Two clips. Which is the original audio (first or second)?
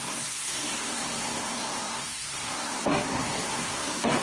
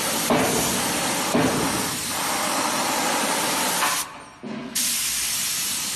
second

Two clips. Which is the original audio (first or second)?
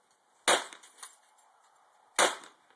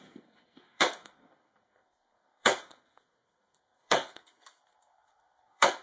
first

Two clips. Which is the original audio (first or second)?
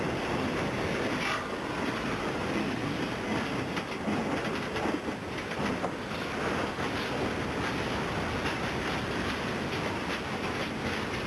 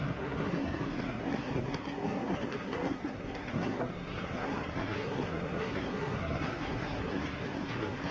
first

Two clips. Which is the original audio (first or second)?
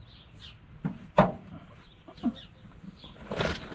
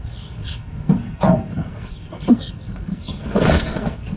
first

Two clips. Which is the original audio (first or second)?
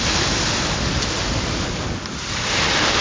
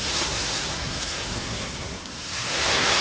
first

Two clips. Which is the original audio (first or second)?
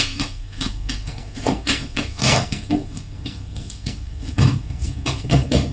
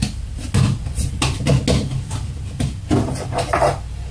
second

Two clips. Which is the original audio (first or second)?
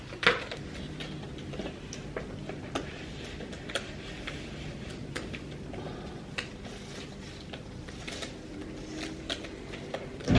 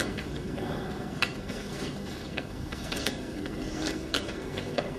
first